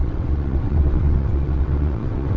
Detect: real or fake fake